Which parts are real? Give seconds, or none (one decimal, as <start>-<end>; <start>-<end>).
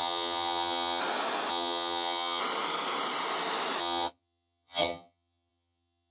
1.0-1.5; 2.4-3.8